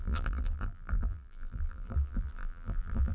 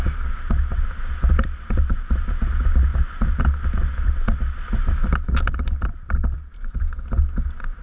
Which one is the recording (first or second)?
second